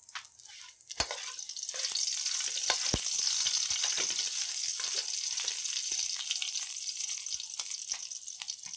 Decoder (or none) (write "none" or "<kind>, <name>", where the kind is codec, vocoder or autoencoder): none